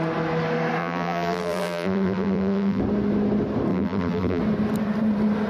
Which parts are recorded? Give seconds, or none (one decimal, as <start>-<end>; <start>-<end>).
0.0-0.8; 2.8-3.7; 4.4-5.5